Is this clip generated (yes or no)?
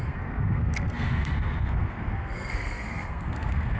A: yes